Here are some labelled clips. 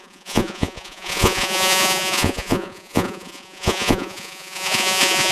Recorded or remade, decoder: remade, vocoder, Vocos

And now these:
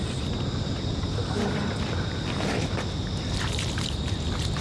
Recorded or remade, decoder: recorded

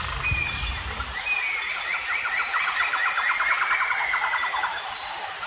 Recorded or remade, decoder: recorded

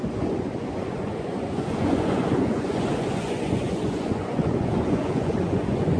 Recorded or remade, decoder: remade, vocoder, Vocos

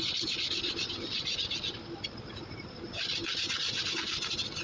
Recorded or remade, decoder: recorded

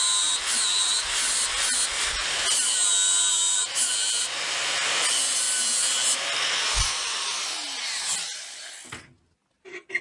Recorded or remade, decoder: recorded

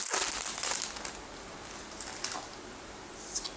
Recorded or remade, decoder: recorded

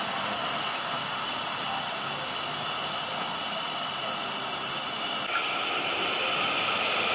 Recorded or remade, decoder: recorded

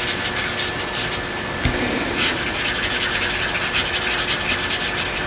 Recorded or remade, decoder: recorded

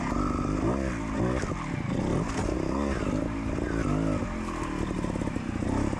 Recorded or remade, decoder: recorded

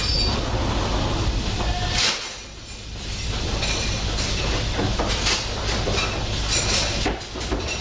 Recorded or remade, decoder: recorded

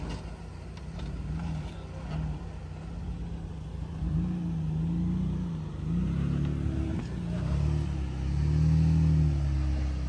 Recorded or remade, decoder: recorded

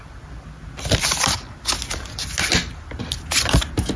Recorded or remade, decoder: recorded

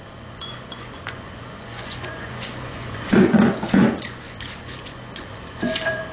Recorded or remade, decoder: remade, vocoder, Vocos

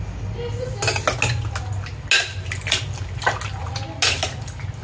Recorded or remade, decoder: recorded